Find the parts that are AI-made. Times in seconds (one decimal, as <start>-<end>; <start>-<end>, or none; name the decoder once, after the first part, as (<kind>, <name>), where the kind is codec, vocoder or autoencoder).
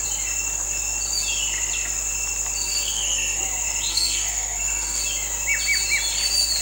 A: 2.7-3.4 (codec, SNAC); 3.9-5.0